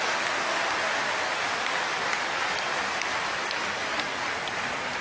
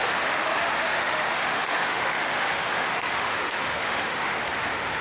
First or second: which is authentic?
first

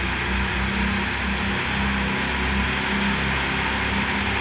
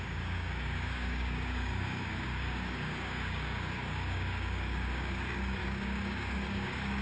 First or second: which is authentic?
first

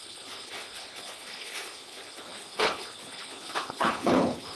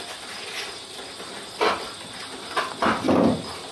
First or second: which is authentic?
second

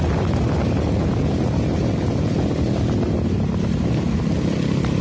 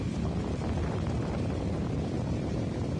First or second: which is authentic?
first